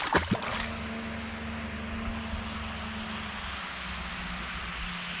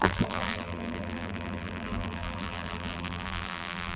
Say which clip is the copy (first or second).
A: second